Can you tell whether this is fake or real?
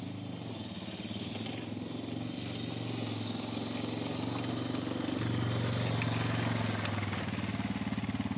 real